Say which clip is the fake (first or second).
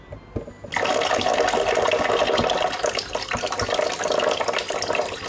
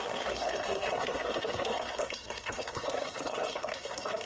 second